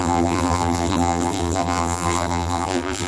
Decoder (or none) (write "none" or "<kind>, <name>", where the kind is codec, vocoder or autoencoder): vocoder, BigVGAN v2